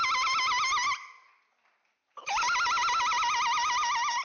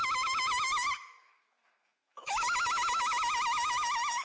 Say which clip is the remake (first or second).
second